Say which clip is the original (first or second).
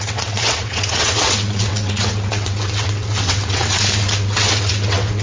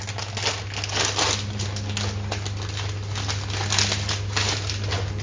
second